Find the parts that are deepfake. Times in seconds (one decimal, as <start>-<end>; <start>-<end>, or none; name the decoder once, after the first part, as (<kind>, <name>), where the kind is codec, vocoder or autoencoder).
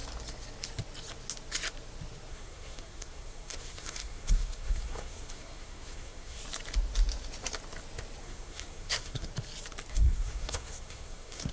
2.3-6.4 (codec, SNAC); 8.2-9.3; 9.9-11.5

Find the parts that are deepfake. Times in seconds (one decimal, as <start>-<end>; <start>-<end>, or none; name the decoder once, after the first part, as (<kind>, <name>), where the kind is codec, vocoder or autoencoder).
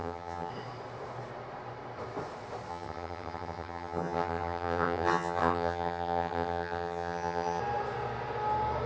0.0-0.5 (vocoder, HiFi-GAN); 2.7-7.6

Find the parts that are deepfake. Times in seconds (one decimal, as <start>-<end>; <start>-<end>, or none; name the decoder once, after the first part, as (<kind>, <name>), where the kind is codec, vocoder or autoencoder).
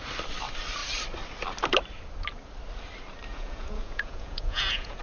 3.3-5.0 (vocoder, Vocos)